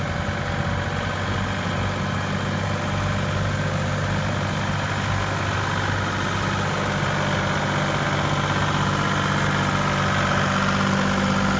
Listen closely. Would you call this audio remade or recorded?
recorded